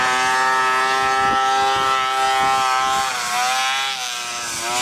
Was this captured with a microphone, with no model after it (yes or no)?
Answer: yes